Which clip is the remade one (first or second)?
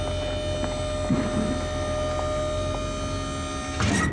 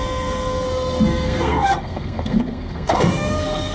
second